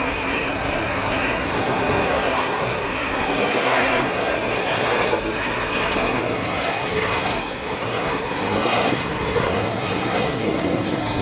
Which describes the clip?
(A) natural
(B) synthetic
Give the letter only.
B